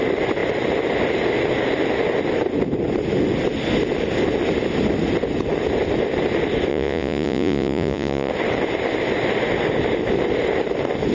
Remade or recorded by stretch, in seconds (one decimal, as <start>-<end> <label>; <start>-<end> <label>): 0.0-6.7 recorded; 6.7-8.3 remade; 8.3-11.1 recorded

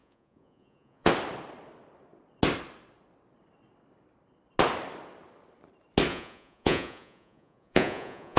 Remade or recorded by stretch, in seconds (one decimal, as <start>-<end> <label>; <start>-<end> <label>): 0.0-1.1 remade; 1.1-6.1 recorded; 6.1-8.4 remade

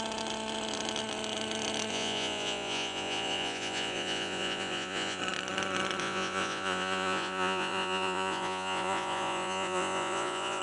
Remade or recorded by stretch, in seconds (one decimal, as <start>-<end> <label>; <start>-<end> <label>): 0.0-1.9 recorded; 1.9-5.2 remade; 5.2-6.0 recorded; 6.0-10.6 remade

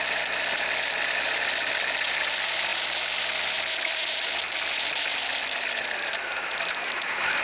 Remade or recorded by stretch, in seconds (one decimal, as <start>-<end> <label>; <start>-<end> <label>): 0.0-7.4 recorded

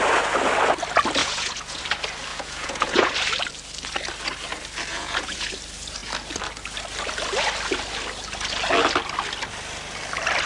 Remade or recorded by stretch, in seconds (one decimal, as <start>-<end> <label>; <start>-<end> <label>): 0.0-1.2 recorded; 1.2-1.8 remade; 1.8-2.3 recorded; 2.3-3.1 remade; 3.1-4.9 recorded; 4.9-5.5 remade; 5.5-10.5 recorded

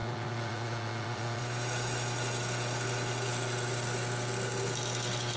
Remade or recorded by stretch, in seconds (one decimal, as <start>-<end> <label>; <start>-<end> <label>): 0.0-1.4 remade; 1.4-5.4 recorded

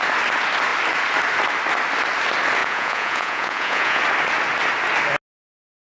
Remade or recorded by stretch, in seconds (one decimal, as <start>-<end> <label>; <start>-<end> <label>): 0.0-2.6 recorded; 2.6-4.0 remade; 4.0-5.9 recorded

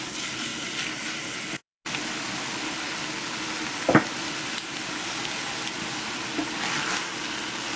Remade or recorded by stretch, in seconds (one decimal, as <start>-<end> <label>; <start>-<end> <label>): 0.0-7.8 recorded